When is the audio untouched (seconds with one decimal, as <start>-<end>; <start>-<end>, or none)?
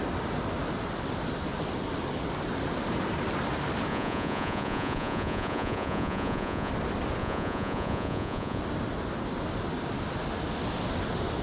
0.0-3.9; 6.7-7.2; 8.6-11.4